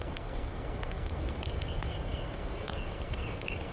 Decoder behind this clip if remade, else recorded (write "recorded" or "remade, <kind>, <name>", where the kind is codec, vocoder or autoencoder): remade, codec, SNAC